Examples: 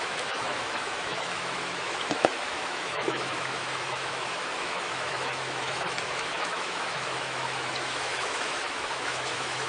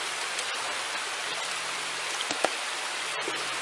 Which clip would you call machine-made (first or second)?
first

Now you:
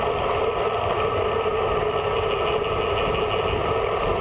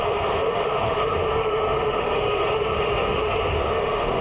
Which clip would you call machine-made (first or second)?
second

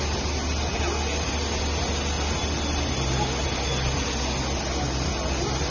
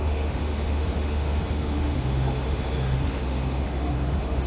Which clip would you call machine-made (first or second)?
second